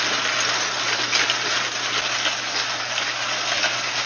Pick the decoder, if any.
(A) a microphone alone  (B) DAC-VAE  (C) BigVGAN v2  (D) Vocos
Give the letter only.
A